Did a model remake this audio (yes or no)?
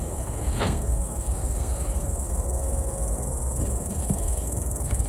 yes